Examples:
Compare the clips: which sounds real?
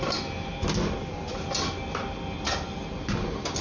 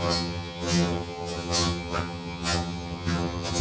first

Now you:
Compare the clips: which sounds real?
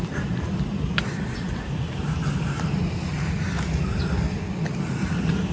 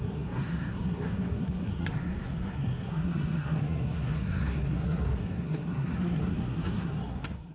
first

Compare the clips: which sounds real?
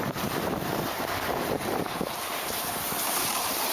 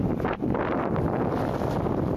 second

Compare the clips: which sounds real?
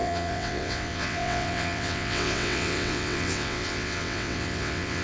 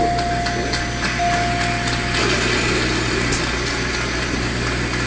second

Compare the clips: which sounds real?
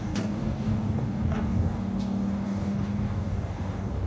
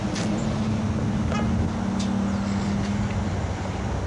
second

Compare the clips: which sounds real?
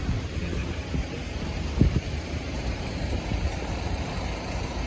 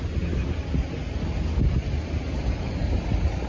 second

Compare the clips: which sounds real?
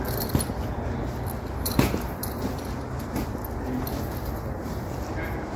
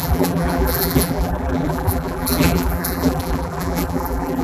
first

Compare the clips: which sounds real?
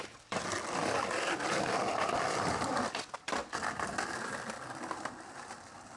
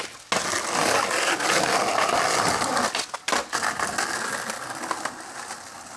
second